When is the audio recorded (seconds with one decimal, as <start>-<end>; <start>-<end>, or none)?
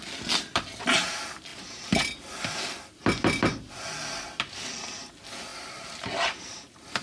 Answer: 0.0-5.5; 6.4-7.0